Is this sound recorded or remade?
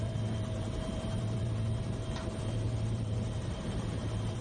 remade